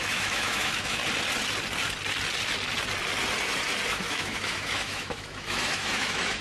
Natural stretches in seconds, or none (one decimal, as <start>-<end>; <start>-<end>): 1.0-3.9